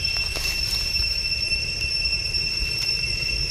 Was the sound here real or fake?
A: real